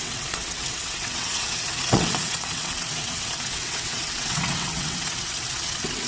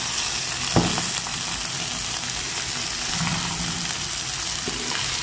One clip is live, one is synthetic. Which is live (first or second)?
second